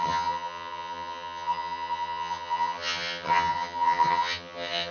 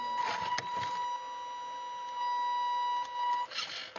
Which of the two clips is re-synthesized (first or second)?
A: first